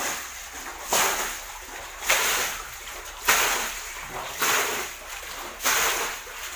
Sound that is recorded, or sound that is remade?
recorded